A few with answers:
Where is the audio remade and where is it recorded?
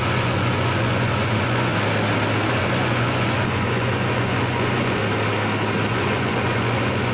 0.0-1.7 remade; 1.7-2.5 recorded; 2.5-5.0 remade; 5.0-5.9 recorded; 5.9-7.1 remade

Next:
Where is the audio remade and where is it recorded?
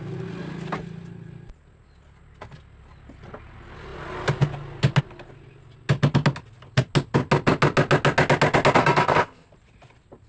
0.0-8.8 recorded; 8.8-9.5 remade; 9.5-10.3 recorded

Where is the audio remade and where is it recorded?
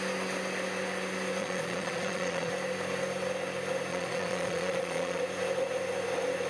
0.0-1.4 recorded; 1.4-2.5 remade; 2.5-3.9 recorded; 3.9-5.2 remade; 5.2-6.5 recorded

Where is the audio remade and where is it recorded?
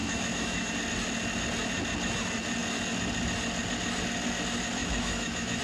0.0-0.7 remade; 0.7-4.8 recorded; 4.8-5.6 remade